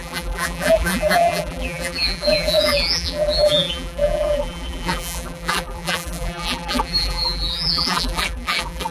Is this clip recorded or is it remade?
remade